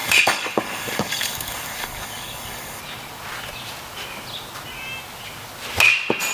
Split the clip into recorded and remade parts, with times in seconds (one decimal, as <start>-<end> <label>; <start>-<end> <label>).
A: 0.0-2.8 remade; 2.8-6.3 recorded